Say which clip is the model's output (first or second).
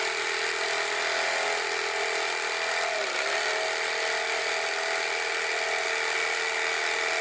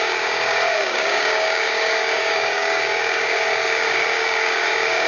second